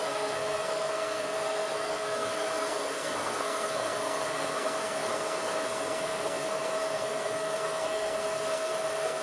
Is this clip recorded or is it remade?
remade